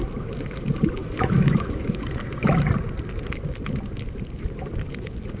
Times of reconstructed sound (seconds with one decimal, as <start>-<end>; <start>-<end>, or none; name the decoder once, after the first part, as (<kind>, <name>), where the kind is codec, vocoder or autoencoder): 1.0-2.0 (autoencoder, DAC-VAE)